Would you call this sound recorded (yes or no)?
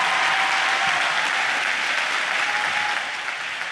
yes